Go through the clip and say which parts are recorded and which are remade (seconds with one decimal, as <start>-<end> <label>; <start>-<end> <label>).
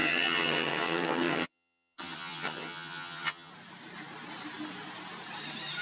0.0-3.5 remade; 3.5-5.8 recorded